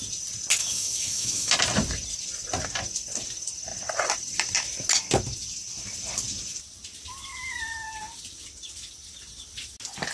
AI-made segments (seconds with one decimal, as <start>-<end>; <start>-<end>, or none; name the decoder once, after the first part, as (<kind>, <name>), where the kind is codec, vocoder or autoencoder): 0.6-1.5 (autoencoder, DAC-VAE)